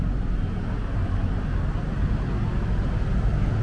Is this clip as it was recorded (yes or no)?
yes